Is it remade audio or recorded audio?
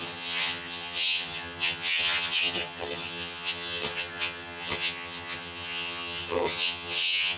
remade